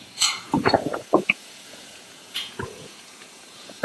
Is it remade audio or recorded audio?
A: remade